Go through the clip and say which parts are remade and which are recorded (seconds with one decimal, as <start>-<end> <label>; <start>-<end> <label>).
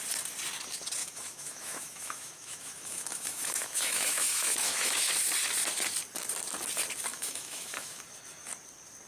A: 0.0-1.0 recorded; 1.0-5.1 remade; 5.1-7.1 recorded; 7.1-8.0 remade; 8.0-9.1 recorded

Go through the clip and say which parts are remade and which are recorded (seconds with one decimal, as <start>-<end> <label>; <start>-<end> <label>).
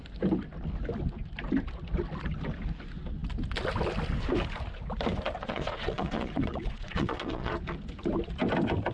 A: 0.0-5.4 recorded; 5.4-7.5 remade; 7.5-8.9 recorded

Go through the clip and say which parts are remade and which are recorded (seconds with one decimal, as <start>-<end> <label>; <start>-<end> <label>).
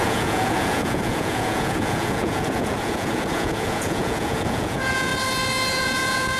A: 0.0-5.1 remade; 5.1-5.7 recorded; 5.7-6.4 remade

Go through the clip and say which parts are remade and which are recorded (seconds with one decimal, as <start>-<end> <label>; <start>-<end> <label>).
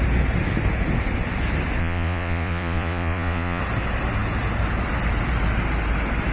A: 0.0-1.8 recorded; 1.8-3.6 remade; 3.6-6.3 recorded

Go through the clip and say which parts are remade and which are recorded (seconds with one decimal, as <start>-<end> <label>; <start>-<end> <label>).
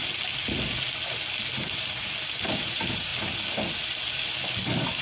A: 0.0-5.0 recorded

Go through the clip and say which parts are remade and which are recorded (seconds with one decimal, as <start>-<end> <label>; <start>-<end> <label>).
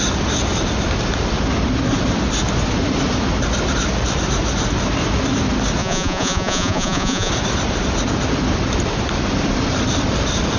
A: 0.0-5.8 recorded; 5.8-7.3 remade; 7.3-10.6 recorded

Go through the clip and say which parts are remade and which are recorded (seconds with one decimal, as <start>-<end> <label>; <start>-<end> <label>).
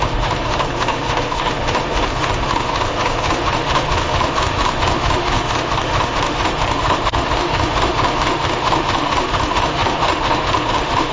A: 0.0-11.1 remade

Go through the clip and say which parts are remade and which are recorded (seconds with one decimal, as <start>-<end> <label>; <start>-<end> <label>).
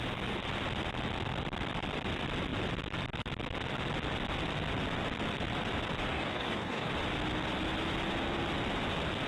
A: 0.0-6.1 recorded; 6.1-6.9 remade; 6.9-9.3 recorded